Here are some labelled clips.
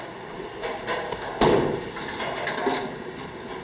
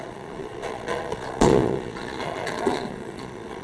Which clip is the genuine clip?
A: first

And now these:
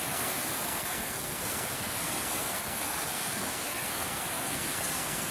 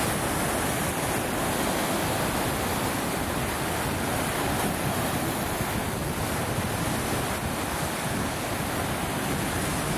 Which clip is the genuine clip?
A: second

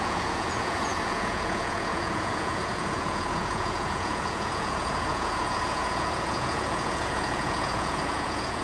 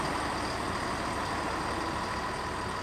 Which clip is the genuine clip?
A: second